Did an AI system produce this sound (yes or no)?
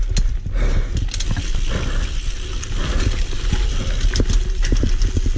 no